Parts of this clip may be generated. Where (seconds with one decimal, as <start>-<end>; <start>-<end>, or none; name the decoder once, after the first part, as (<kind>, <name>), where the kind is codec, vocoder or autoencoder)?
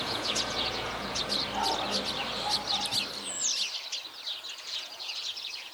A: 0.0-1.2 (vocoder, Vocos); 4.6-5.7